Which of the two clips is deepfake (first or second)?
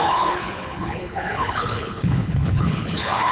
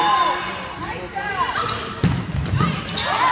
first